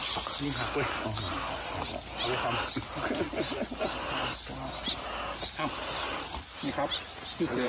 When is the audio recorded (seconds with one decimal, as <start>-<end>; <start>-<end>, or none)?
0.0-7.7